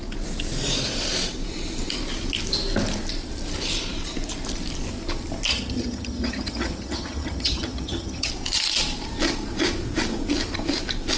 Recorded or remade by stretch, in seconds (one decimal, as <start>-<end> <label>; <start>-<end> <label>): 0.0-5.5 recorded; 5.5-8.3 remade; 8.3-11.2 recorded